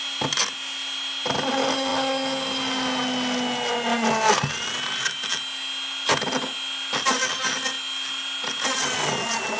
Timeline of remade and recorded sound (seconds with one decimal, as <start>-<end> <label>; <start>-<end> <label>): 0.0-9.6 recorded

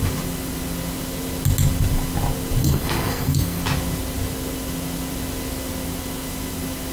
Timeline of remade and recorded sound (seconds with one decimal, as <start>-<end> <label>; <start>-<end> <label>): 0.0-2.6 recorded; 2.6-3.6 remade; 3.6-6.9 recorded

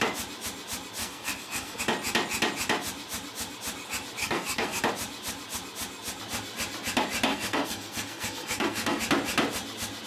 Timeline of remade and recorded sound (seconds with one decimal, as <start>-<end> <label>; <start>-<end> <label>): 0.0-1.0 recorded; 1.0-1.8 remade; 1.8-4.2 recorded; 4.2-4.8 remade; 4.8-7.3 recorded; 7.3-9.0 remade; 9.0-10.1 recorded

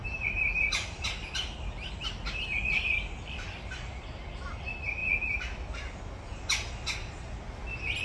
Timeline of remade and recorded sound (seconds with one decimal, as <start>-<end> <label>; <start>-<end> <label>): 0.0-1.9 remade; 1.9-8.0 recorded

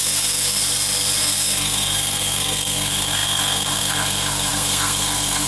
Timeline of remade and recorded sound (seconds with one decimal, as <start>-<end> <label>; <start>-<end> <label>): 0.0-0.6 remade; 0.6-1.2 recorded; 1.2-5.5 remade

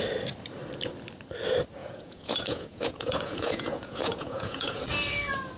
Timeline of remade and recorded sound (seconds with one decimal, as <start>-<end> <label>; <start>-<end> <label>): 0.0-1.8 recorded; 1.8-4.8 remade; 4.8-5.6 recorded